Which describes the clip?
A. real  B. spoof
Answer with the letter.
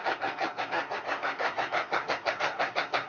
B